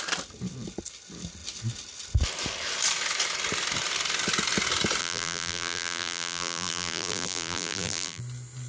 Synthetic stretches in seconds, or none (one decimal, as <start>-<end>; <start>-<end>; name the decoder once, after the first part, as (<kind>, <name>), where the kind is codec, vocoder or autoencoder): 5.0-8.2 (vocoder, BigVGAN v2)